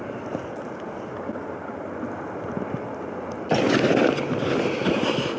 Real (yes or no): yes